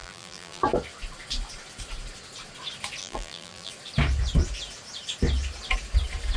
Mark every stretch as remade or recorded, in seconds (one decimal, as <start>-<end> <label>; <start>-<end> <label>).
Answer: 0.0-0.6 remade; 0.6-3.0 recorded; 3.0-3.7 remade; 3.7-6.4 recorded